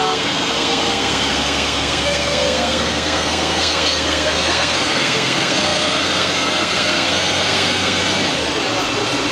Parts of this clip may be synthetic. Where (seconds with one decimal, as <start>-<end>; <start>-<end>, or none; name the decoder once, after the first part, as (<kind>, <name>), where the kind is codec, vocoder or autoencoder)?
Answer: 0.0-8.0 (codec, SNAC)